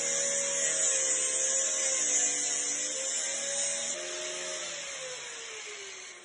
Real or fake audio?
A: real